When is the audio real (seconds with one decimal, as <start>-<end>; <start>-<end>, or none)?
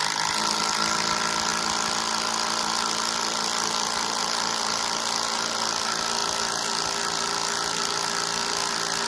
0.0-9.1